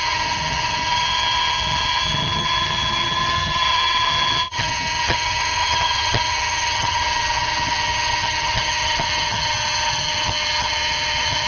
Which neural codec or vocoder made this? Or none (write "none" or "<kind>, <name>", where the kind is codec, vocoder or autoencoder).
vocoder, HiFi-GAN